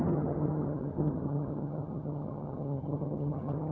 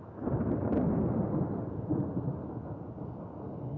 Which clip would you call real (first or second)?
second